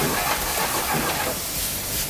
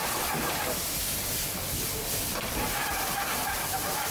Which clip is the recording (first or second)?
first